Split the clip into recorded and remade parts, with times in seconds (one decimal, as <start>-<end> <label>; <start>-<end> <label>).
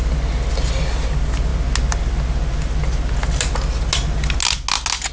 0.0-5.1 recorded